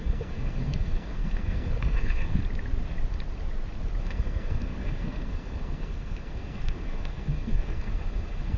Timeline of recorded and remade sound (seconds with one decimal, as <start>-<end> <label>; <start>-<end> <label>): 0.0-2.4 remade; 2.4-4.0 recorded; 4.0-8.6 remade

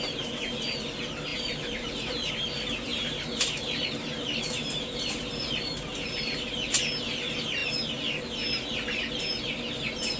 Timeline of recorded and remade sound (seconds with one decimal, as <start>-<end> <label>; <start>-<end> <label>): 0.0-1.3 recorded; 1.3-2.3 remade; 2.3-2.9 recorded; 2.9-6.6 remade; 6.6-10.2 recorded

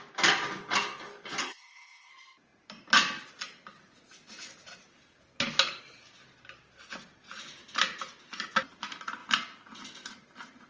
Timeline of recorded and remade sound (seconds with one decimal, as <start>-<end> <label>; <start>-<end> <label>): 0.0-1.4 recorded; 1.4-2.1 remade; 2.1-10.7 recorded